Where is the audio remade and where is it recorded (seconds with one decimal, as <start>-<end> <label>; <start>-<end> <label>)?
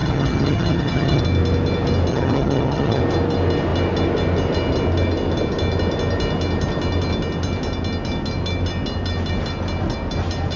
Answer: 0.0-1.2 remade; 1.2-2.1 recorded; 2.1-3.0 remade; 3.0-10.6 recorded